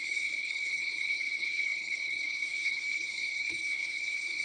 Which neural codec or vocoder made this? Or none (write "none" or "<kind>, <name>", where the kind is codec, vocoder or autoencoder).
codec, HILCodec